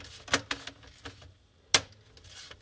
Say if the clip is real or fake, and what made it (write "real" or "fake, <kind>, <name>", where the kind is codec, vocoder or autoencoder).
real